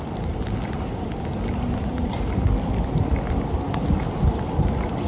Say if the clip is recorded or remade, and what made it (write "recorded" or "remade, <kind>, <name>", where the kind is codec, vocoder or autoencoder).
recorded